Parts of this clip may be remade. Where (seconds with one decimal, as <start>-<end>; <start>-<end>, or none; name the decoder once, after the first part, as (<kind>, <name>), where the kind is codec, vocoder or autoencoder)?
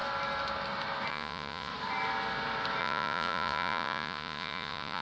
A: 1.1-1.7 (vocoder, Vocos); 2.8-5.0